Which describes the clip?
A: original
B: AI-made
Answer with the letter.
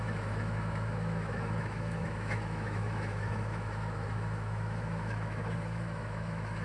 B